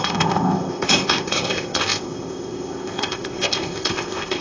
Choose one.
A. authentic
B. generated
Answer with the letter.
B